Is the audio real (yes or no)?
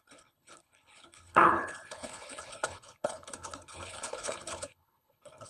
no